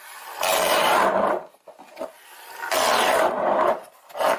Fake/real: real